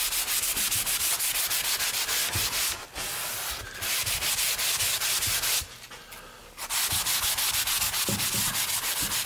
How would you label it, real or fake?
real